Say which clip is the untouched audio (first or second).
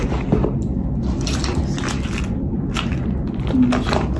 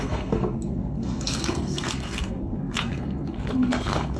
first